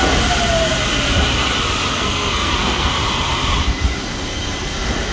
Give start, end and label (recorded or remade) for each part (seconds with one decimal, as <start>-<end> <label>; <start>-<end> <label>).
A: 0.0-1.9 recorded; 1.9-2.9 remade; 2.9-5.1 recorded

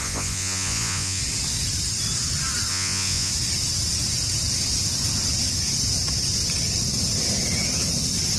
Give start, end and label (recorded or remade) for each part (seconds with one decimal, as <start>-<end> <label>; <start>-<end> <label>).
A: 0.0-1.2 remade; 1.2-2.7 recorded; 2.7-3.3 remade; 3.3-8.4 recorded

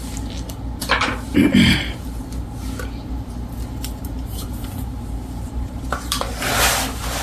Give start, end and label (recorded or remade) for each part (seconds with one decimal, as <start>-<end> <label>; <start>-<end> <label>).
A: 0.0-4.0 recorded; 4.0-6.2 remade; 6.2-7.2 recorded

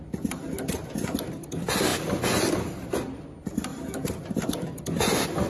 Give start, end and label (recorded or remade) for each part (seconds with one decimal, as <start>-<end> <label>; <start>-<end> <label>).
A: 0.0-5.5 recorded

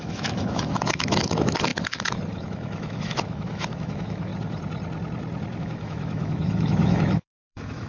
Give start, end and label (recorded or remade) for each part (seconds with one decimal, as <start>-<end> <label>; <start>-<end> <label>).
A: 0.0-4.3 remade; 4.3-5.6 recorded; 5.6-7.9 remade

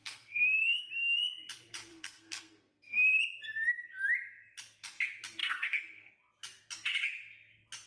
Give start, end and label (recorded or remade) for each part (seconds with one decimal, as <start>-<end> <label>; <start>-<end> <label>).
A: 0.0-0.9 remade; 0.9-1.9 recorded; 1.9-3.2 remade; 3.2-5.4 recorded; 5.4-6.1 remade; 6.1-7.9 recorded

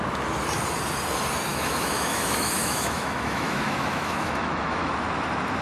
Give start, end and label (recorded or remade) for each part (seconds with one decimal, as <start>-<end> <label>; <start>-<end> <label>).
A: 0.0-1.5 recorded; 1.5-4.9 remade; 4.9-5.6 recorded

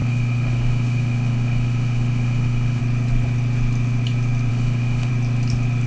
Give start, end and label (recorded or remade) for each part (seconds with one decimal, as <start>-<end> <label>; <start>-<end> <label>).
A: 0.0-2.8 remade; 2.8-4.5 recorded; 4.5-5.1 remade; 5.1-5.9 recorded